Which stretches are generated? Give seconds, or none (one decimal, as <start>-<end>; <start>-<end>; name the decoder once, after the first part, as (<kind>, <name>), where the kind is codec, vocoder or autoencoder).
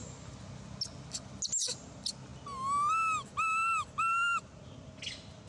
none